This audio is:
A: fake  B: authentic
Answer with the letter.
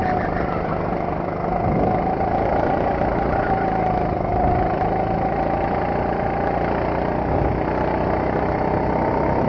B